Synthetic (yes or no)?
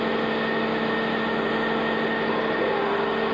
no